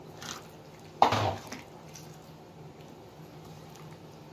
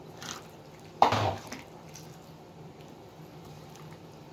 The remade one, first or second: second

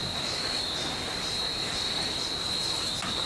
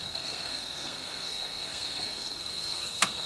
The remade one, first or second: second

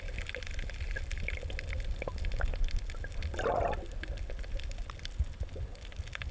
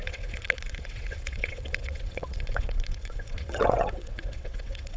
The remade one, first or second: second